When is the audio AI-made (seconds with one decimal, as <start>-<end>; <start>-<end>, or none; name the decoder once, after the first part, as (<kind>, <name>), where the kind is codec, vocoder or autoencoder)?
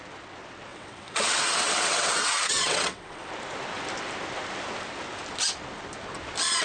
0.7-3.3 (vocoder, WaveNeXt)